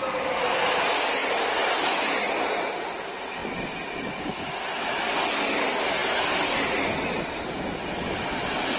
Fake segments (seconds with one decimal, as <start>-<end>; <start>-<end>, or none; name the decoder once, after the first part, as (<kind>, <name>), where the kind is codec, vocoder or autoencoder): none